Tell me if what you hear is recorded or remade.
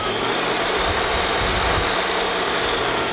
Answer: recorded